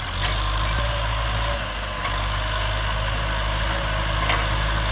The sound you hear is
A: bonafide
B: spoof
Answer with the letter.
A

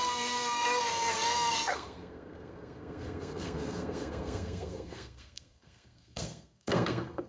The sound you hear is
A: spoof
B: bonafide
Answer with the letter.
A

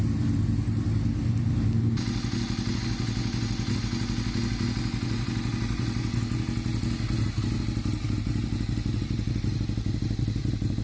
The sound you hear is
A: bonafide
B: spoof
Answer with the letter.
A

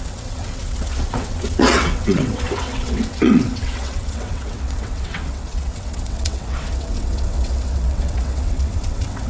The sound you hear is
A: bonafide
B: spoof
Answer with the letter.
B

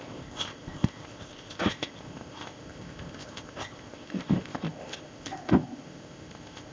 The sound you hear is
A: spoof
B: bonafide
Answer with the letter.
A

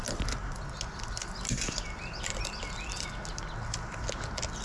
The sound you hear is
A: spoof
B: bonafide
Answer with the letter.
B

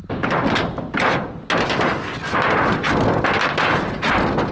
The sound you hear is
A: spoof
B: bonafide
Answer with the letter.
B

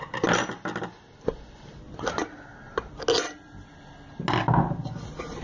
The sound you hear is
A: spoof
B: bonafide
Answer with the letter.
B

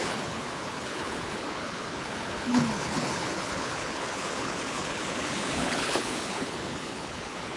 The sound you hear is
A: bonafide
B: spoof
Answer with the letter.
B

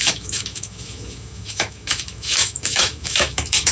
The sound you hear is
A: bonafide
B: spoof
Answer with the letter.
B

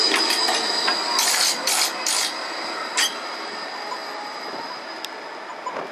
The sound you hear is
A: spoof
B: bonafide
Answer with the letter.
B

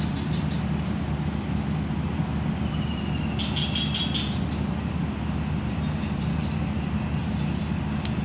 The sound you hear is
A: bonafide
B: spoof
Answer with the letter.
A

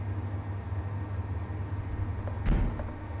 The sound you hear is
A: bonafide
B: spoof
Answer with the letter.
A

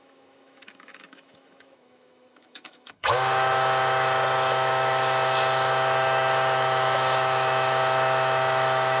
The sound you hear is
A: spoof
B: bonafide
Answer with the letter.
A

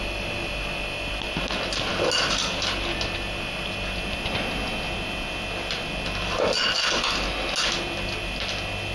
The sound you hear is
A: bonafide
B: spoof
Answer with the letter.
A